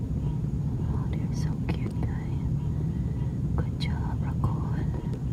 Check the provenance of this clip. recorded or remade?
recorded